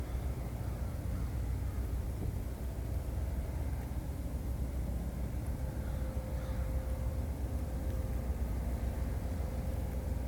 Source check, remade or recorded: recorded